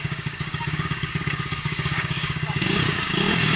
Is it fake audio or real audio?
fake